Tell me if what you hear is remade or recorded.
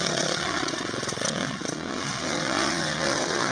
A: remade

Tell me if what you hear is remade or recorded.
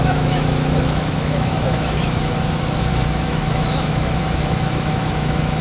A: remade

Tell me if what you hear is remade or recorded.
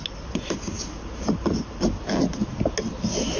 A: recorded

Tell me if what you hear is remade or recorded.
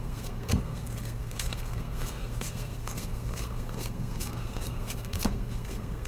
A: remade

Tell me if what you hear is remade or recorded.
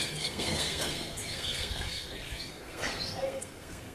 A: remade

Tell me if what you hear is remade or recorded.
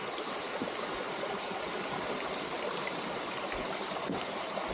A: remade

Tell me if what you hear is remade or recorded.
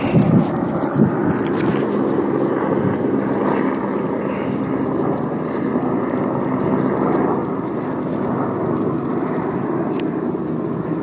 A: recorded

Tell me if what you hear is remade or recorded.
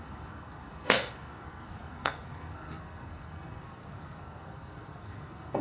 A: remade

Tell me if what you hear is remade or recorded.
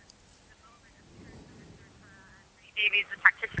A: recorded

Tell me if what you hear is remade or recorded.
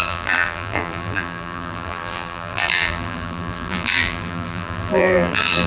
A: remade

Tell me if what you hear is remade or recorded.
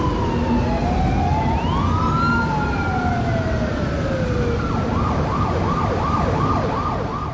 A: recorded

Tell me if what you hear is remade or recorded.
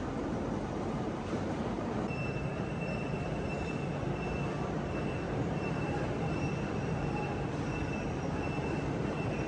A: remade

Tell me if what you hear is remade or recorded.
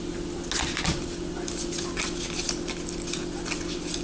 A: recorded